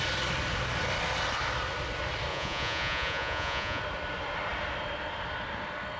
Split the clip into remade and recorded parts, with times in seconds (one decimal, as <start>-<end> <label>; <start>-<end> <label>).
0.0-2.3 recorded; 2.3-3.8 remade; 3.8-6.0 recorded